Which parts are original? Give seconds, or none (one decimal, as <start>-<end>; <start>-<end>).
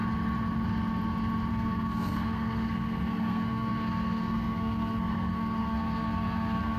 0.0-1.5